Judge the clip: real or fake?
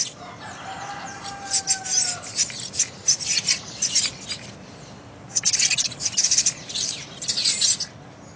real